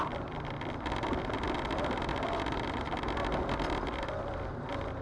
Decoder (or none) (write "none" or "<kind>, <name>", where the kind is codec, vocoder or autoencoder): none